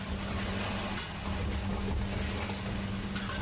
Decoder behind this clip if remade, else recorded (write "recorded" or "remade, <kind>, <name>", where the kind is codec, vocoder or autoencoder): recorded